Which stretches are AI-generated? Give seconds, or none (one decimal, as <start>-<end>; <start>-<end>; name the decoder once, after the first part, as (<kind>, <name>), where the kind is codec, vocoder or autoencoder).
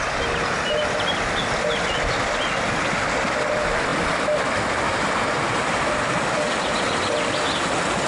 none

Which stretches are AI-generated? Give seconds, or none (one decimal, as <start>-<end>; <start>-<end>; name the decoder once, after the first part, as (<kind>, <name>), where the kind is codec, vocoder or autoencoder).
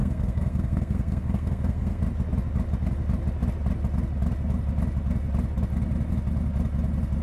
0.0-2.0 (codec, SNAC)